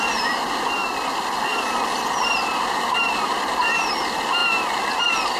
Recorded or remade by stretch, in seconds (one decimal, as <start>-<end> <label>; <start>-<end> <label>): 0.0-4.4 remade; 4.4-5.0 recorded; 5.0-5.4 remade